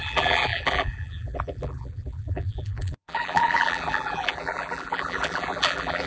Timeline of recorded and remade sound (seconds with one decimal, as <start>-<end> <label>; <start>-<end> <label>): 0.0-6.1 remade